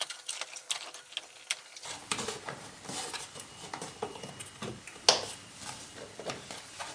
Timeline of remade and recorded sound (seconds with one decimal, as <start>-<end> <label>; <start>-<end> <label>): 0.0-6.9 recorded